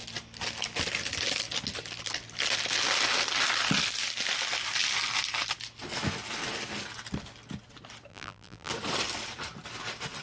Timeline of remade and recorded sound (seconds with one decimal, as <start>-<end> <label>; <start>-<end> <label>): 0.0-8.1 recorded; 8.1-8.7 remade; 8.7-10.2 recorded